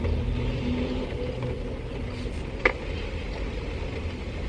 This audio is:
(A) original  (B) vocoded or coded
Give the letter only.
A